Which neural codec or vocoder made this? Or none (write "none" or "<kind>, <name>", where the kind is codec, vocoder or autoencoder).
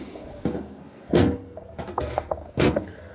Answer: codec, SNAC